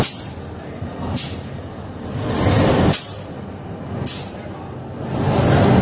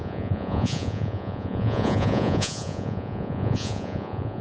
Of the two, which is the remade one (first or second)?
second